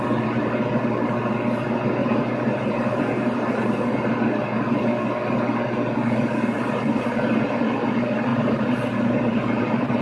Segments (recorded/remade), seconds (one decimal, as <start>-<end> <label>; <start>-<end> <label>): 0.0-2.0 recorded; 2.0-3.5 remade; 3.5-8.3 recorded; 8.3-10.0 remade